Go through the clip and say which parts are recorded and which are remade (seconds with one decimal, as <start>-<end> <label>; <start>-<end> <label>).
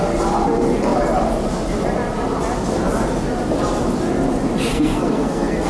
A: 0.0-4.7 recorded; 4.7-5.7 remade